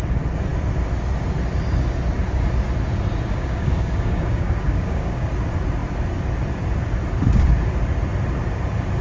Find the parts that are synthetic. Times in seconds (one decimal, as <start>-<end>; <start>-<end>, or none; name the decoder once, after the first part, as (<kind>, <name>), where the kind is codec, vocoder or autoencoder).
3.3-5.3 (codec, DAC)